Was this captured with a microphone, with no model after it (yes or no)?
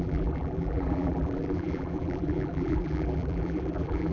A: no